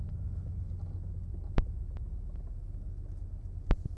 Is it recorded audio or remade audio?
recorded